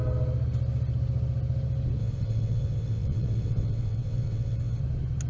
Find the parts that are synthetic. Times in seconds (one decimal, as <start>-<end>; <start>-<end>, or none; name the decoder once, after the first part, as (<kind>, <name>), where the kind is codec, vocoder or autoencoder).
2.0-4.8 (vocoder, WaveNeXt)